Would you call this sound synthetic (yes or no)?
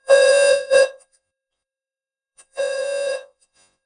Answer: yes